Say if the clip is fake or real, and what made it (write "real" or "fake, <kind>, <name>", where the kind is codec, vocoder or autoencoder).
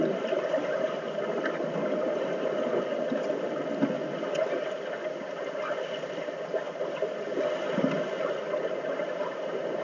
real